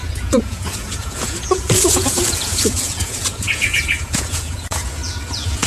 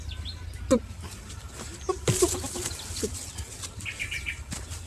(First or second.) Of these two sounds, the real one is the second